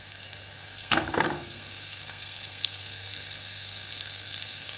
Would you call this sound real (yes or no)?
no